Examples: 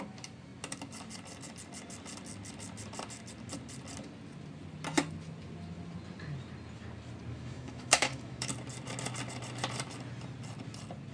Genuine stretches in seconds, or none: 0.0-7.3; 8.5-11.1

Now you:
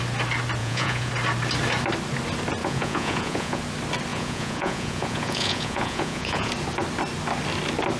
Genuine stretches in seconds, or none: 0.0-0.6; 1.1-2.6; 3.6-4.1; 6.5-8.0

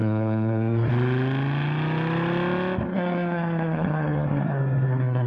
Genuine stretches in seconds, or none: 0.9-2.9

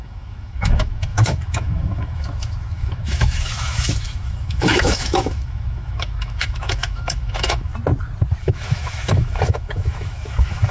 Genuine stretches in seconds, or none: 7.7-8.4